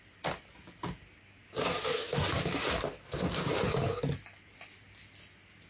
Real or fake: real